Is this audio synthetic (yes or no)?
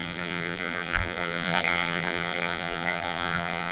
yes